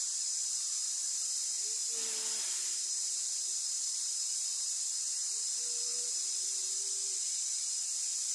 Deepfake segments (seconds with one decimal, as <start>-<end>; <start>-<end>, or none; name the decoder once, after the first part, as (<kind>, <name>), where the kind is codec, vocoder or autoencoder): none